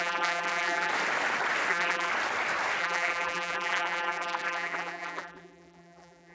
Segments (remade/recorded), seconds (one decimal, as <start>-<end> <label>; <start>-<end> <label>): 0.0-0.9 remade; 0.9-1.7 recorded; 1.7-2.1 remade; 2.1-2.8 recorded; 2.8-6.3 remade